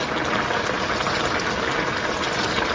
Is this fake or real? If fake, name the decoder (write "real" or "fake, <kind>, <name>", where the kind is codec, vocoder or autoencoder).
real